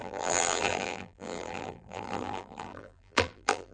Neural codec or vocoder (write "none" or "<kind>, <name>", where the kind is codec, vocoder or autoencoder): vocoder, BigVGAN v2